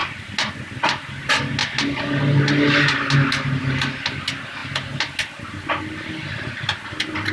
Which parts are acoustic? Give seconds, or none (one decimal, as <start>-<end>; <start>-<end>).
0.0-7.3

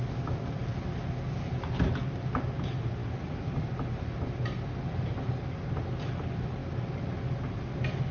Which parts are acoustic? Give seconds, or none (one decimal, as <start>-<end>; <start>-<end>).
0.0-8.1

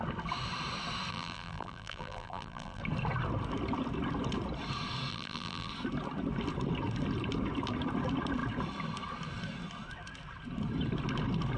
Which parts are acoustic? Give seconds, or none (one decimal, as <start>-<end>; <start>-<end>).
0.0-1.1; 2.8-5.1; 5.7-11.6

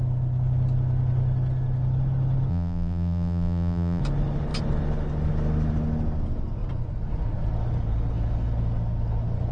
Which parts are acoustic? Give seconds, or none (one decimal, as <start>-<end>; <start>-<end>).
0.0-2.5; 4.0-9.5

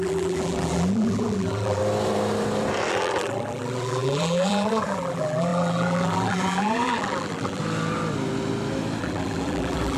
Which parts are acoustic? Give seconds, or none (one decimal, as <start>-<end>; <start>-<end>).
1.8-2.9; 7.6-9.0